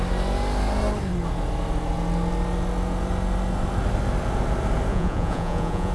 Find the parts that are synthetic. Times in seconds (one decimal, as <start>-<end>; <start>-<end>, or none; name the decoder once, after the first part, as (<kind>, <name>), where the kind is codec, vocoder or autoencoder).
4.9-5.9 (vocoder, Vocos)